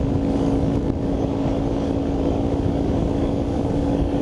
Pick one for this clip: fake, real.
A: fake